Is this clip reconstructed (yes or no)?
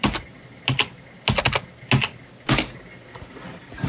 no